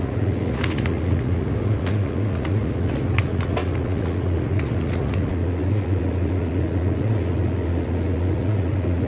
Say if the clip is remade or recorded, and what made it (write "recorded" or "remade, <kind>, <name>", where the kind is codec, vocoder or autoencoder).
remade, vocoder, Vocos